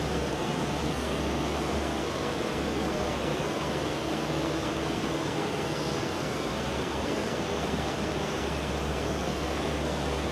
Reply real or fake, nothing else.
fake